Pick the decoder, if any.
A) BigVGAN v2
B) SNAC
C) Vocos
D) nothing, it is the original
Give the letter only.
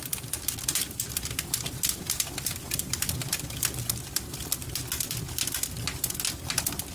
D